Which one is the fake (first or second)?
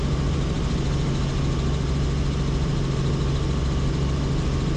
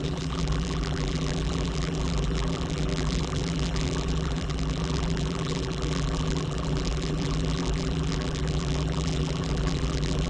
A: second